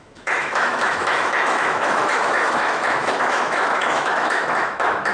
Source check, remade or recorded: remade